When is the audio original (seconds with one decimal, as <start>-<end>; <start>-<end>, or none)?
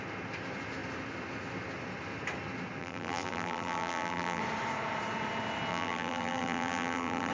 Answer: 0.0-2.8; 4.4-5.7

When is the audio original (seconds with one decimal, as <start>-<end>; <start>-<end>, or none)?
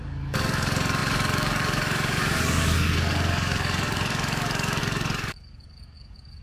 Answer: none